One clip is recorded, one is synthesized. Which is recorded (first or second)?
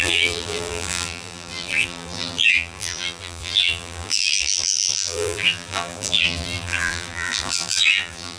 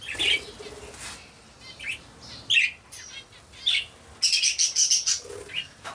second